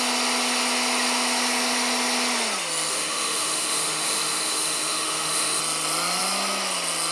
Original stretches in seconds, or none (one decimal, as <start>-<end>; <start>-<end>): 0.0-2.9; 5.6-7.1